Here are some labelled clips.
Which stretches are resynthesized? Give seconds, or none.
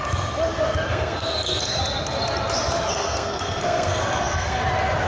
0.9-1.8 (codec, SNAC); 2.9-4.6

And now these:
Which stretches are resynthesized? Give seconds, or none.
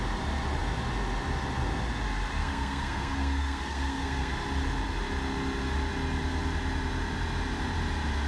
2.4-4.3 (codec, SNAC)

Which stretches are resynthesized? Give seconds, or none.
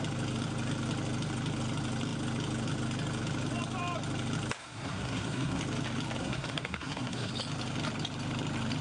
4.6-5.6 (codec, SNAC); 6.2-7.3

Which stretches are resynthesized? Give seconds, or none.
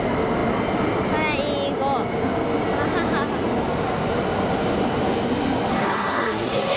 5.7-6.8 (codec, SNAC)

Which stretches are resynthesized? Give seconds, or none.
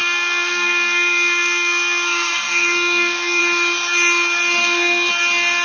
0.0-3.4 (codec, SNAC); 4.6-5.1